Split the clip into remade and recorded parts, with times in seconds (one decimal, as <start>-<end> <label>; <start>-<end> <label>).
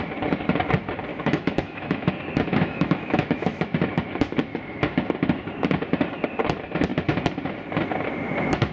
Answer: 0.0-1.1 recorded; 1.1-2.1 remade; 2.1-2.5 recorded; 2.5-3.6 remade; 3.6-8.7 recorded